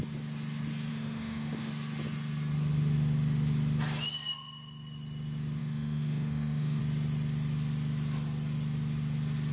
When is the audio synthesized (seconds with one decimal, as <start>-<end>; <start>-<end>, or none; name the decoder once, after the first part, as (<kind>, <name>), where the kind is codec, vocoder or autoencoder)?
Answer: 0.9-1.7 (autoencoder, DAC-VAE); 5.6-6.8